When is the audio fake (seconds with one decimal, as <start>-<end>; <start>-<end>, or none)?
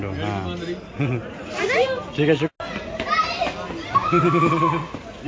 4.0-4.5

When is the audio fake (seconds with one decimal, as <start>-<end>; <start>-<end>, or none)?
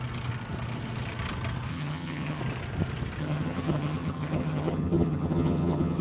1.7-2.4; 3.2-6.0